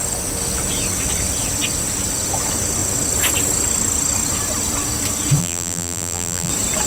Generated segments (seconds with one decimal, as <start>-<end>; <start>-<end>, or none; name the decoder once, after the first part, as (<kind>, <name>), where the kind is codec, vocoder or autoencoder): 5.4-6.5 (vocoder, BigVGAN v2)